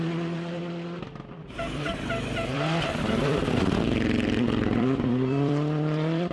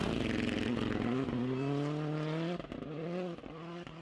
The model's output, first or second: first